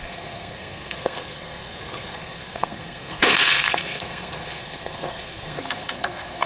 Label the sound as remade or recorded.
remade